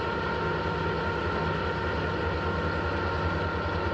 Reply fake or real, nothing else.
real